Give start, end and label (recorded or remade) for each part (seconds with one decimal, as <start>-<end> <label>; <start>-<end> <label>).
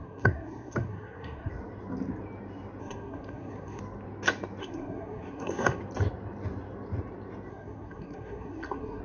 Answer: 0.0-1.5 remade; 1.5-2.8 recorded; 2.8-3.8 remade; 3.8-4.6 recorded; 4.6-5.8 remade; 5.8-7.5 recorded; 7.5-9.0 remade